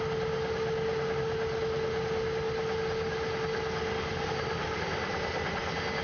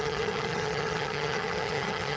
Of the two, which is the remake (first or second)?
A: second